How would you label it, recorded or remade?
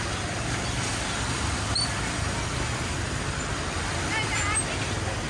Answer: recorded